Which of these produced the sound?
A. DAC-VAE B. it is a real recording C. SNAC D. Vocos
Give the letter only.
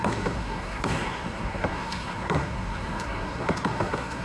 C